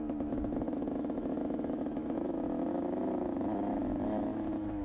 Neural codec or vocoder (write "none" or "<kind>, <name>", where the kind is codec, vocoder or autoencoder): autoencoder, DAC-VAE